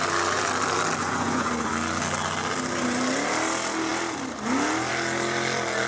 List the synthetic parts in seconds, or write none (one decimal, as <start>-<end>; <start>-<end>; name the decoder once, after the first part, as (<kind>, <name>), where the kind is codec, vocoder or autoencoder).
1.0-1.7 (vocoder, Vocos)